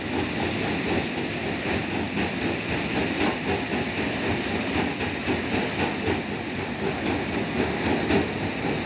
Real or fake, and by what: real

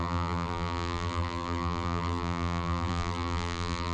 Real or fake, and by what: fake, vocoder, BigVGAN v2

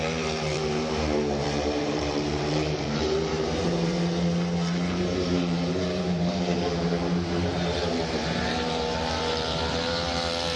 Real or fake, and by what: fake, vocoder, BigVGAN v2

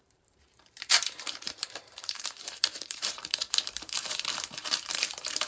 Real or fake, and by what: fake, vocoder, BigVGAN v2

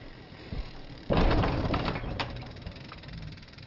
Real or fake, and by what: fake, vocoder, BigVGAN v2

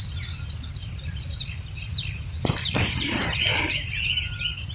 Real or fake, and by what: real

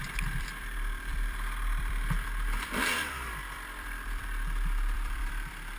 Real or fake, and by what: fake, vocoder, BigVGAN v2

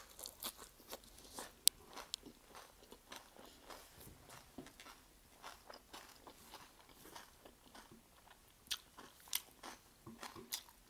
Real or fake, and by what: real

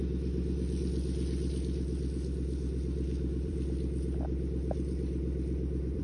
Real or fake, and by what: fake, vocoder, BigVGAN v2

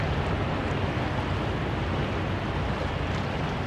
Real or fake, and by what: real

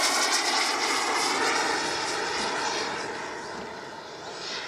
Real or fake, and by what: real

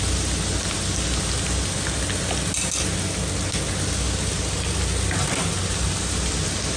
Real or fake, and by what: real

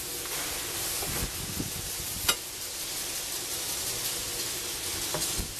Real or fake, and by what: real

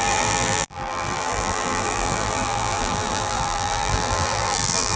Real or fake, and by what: fake, vocoder, BigVGAN v2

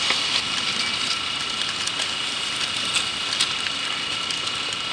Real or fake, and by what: real